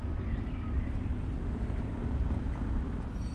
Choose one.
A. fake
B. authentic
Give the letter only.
B